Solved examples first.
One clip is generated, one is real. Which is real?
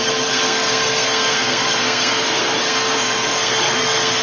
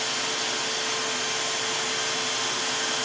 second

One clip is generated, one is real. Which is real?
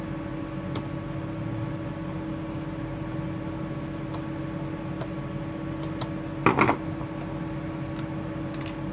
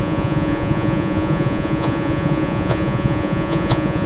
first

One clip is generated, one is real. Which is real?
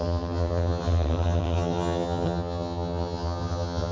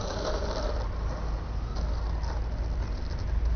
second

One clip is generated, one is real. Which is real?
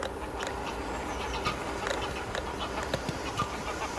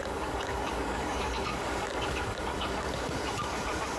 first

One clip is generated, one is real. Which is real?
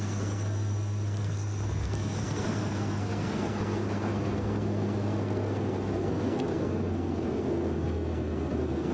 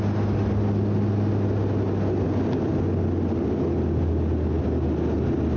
second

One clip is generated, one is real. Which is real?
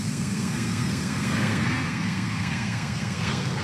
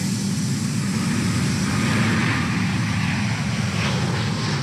second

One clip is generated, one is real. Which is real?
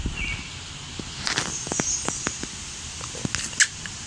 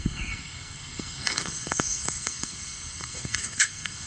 first